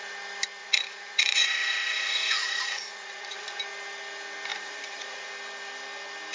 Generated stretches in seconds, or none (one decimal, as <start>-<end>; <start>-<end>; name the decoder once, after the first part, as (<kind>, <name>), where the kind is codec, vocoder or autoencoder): 0.6-3.6 (vocoder, Vocos); 4.5-5.3